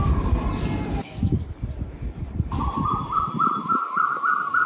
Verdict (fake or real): fake